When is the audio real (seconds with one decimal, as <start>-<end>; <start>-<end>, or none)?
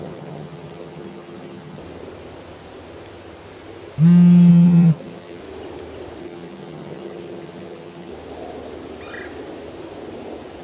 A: 1.8-4.5; 5.4-6.2; 8.1-10.6